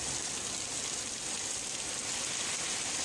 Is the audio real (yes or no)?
yes